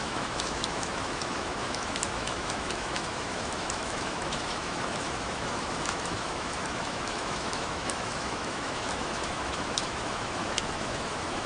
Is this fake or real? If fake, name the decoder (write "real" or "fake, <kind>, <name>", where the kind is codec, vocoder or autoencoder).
fake, autoencoder, DAC-VAE